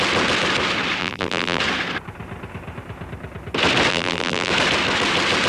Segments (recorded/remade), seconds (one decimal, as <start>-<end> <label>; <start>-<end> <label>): 0.0-1.0 recorded; 1.0-1.6 remade; 1.6-3.9 recorded; 3.9-4.5 remade; 4.5-5.5 recorded